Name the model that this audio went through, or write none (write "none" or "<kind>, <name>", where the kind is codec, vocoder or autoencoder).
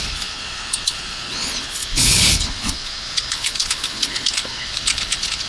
codec, HILCodec